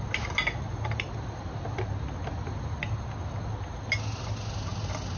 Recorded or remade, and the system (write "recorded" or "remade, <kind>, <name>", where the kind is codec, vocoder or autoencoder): recorded